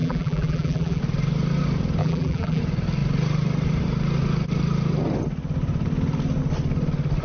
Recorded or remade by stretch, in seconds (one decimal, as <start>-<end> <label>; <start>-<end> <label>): 0.0-1.0 remade; 1.0-2.0 recorded; 2.0-2.6 remade; 2.6-7.2 recorded